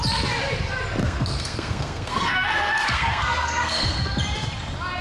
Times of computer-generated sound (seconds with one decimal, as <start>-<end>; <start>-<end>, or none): 1.0-4.0